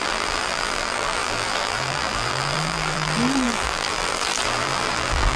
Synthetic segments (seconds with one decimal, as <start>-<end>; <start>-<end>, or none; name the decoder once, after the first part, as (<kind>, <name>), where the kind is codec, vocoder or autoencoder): 0.0-5.4 (vocoder, BigVGAN v2)